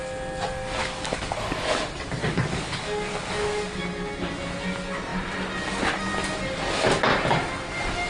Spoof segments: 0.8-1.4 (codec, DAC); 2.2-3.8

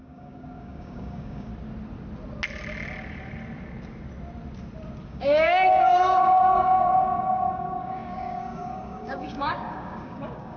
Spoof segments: 0.0-1.5 (codec, DAC); 5.1-10.6

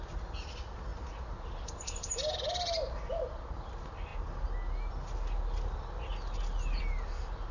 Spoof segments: none

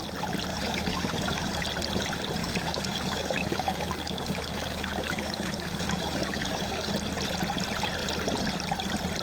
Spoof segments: 0.5-1.6 (codec, DAC); 2.4-6.9

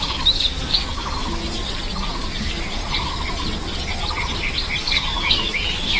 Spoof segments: 0.0-1.6 (codec, DAC); 2.1-2.8; 4.8-6.0

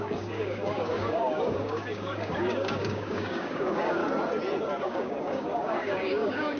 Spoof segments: 0.0-4.0 (codec, DAC); 4.8-6.6

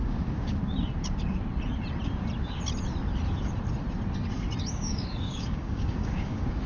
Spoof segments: 0.0-0.6 (codec, DAC); 4.6-6.7